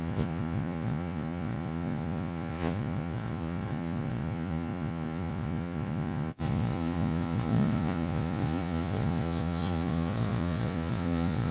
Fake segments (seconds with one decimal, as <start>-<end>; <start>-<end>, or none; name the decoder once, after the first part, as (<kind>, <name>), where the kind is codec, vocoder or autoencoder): 0.0-11.5 (vocoder, Vocos)